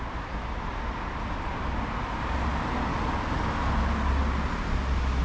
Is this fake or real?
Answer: real